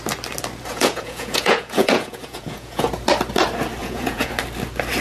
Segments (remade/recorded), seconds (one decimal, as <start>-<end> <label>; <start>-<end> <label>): 0.0-0.7 recorded; 0.7-2.9 remade; 2.9-3.8 recorded; 3.8-4.3 remade; 4.3-5.0 recorded

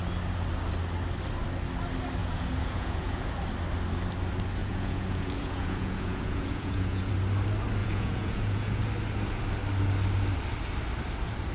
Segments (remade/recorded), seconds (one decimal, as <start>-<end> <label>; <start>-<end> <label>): 0.0-2.2 recorded; 2.2-3.3 remade; 3.3-4.6 recorded; 4.6-7.1 remade; 7.1-7.8 recorded; 7.8-8.8 remade; 8.8-11.5 recorded